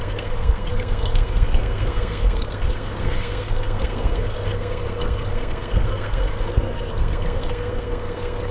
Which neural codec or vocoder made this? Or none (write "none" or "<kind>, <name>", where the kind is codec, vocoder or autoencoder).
codec, SNAC